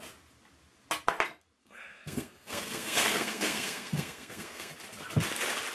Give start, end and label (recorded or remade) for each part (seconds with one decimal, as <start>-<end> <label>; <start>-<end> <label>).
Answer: 0.0-1.6 recorded; 1.6-4.7 remade; 4.7-5.7 recorded